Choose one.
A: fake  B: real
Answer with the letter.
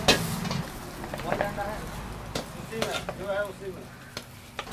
B